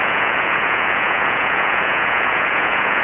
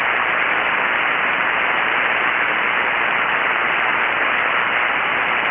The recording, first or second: second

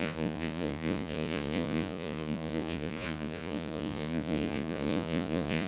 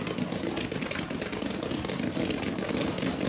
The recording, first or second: second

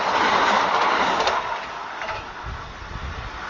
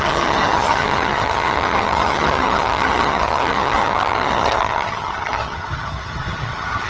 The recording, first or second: first